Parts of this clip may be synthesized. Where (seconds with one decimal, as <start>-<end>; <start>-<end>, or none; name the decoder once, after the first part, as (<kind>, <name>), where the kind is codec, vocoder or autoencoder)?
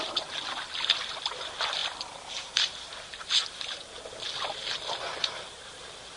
0.0-6.2 (vocoder, BigVGAN v2)